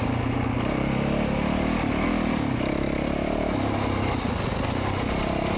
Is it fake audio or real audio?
real